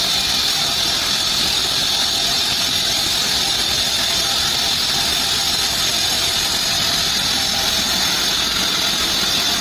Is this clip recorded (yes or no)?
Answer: yes